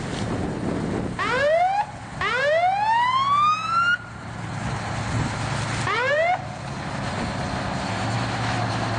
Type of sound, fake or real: real